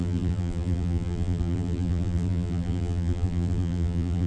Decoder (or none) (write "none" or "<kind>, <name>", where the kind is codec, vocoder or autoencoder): vocoder, BigVGAN v2